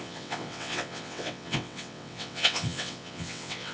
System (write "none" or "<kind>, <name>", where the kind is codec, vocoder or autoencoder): vocoder, WaveNeXt